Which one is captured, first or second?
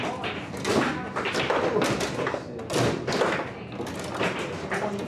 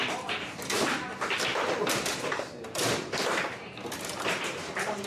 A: first